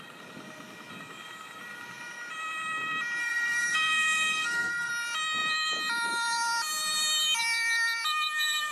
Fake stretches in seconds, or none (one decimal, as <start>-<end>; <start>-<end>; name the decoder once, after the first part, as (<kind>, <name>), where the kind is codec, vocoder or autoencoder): 3.2-4.9 (codec, SNAC)